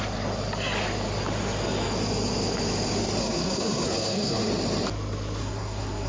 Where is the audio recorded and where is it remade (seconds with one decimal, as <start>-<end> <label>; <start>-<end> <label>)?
0.0-3.2 recorded; 3.2-4.5 remade; 4.5-5.4 recorded; 5.4-6.1 remade